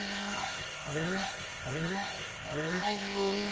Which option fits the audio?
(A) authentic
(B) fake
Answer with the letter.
B